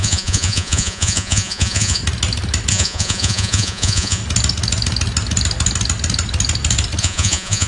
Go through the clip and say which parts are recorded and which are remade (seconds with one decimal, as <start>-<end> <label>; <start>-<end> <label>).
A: 0.0-2.0 remade; 2.0-2.7 recorded; 2.7-4.2 remade; 4.2-7.0 recorded; 7.0-7.7 remade